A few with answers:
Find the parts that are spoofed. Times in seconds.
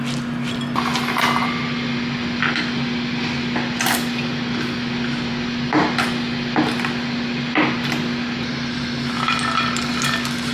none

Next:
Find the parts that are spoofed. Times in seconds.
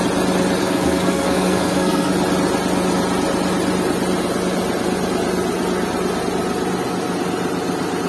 0.6-2.1 (codec, SNAC)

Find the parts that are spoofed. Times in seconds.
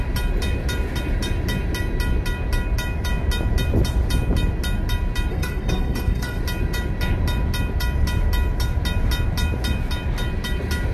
5.3-6.4 (codec, SNAC)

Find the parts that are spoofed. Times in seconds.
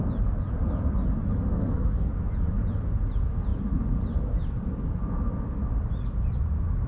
1.5-2.1 (codec, SNAC)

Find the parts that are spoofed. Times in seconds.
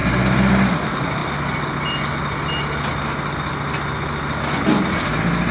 none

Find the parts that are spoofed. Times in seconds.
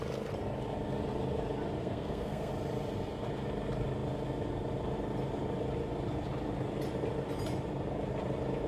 1.8-2.5 (codec, SNAC)